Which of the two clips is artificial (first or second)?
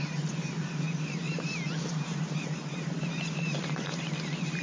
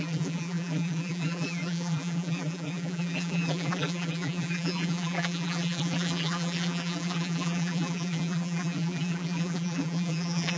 second